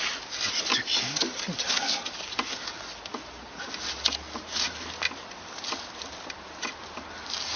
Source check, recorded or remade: recorded